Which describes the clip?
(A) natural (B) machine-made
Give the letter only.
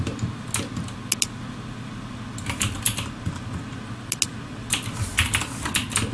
A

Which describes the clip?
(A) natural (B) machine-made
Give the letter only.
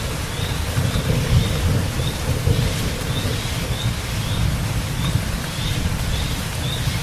A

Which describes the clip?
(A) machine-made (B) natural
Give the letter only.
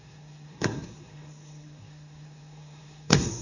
A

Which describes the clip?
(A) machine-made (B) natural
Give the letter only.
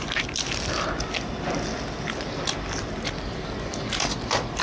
B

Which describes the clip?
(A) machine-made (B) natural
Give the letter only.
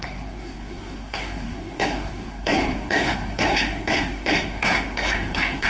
A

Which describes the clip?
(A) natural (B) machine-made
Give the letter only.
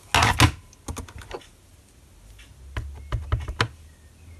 A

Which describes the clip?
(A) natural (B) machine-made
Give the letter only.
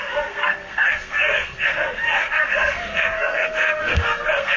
B